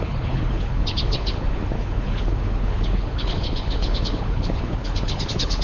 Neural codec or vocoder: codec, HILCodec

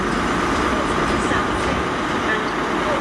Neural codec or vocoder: none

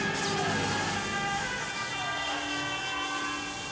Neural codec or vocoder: none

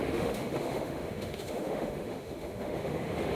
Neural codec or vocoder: autoencoder, DAC-VAE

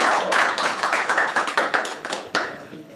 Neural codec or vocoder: codec, HILCodec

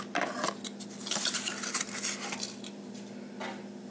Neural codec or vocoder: none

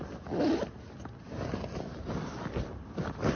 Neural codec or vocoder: none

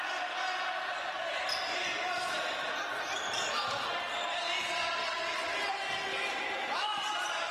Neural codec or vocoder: none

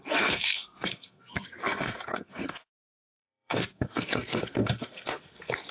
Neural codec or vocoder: codec, SNAC